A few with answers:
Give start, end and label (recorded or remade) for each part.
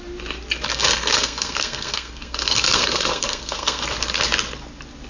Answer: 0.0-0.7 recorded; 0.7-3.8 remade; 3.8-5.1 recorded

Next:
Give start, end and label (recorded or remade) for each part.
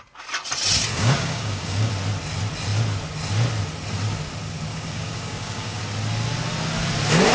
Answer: 0.0-0.9 recorded; 0.9-1.9 remade; 1.9-4.7 recorded; 4.7-5.8 remade; 5.8-7.3 recorded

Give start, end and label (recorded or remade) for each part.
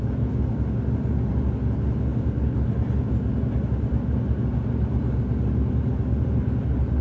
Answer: 0.0-7.0 recorded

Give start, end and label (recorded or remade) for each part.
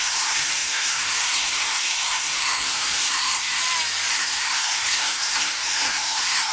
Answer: 0.0-3.6 remade; 3.6-4.1 recorded; 4.1-6.5 remade